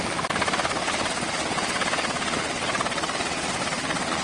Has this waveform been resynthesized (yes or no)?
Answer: no